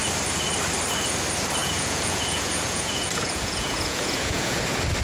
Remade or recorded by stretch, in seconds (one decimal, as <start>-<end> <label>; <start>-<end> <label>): 0.0-1.6 recorded; 1.6-4.6 remade; 4.6-5.0 recorded